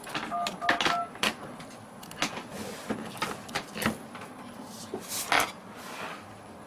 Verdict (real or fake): real